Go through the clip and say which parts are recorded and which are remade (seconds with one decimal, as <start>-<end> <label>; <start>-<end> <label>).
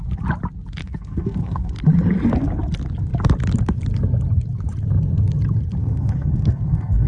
0.0-0.8 recorded; 0.8-1.7 remade; 1.7-5.8 recorded; 5.8-7.1 remade